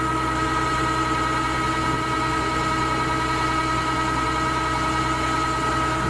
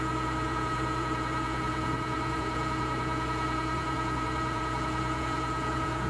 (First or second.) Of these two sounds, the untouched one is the first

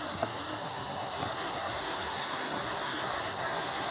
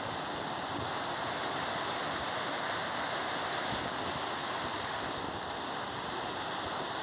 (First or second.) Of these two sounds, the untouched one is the second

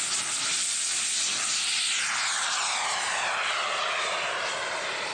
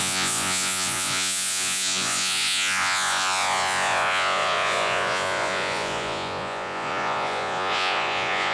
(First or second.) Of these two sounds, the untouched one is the first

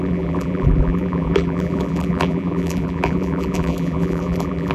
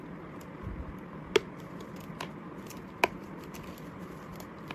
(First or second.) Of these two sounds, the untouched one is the second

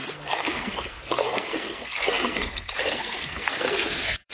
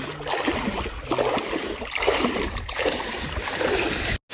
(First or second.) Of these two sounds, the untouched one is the second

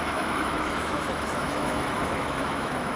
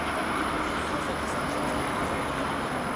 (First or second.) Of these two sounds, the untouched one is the second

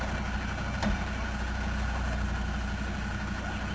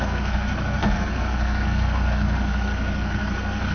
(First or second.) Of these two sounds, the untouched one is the first